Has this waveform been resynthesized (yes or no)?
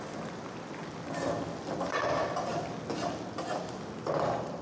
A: no